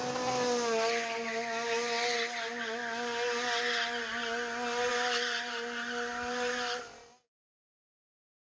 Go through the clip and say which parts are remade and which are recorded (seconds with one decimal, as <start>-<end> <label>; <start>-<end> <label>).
0.0-8.5 recorded